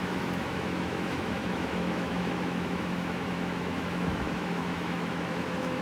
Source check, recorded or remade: remade